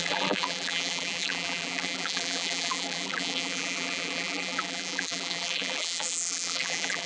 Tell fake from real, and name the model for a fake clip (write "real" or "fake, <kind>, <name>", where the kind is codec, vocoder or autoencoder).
fake, vocoder, BigVGAN v2